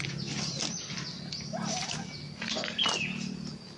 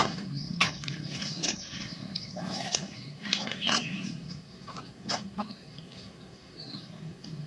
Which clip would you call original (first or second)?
first